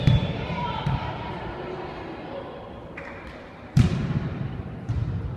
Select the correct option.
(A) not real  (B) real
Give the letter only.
A